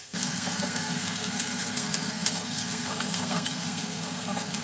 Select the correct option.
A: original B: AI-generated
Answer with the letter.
B